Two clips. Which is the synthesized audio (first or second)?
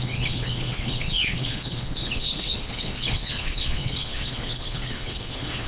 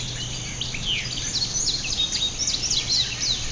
first